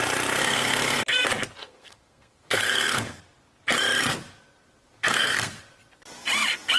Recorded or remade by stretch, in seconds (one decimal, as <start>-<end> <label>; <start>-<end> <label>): 0.0-0.4 recorded; 0.4-1.0 remade; 1.0-1.6 recorded; 1.6-3.2 remade; 3.2-5.0 recorded; 5.0-5.6 remade; 5.6-6.8 recorded